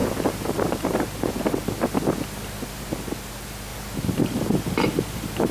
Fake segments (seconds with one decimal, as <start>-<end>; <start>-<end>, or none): 0.0-1.3; 3.7-5.5